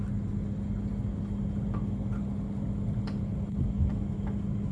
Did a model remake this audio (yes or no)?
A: no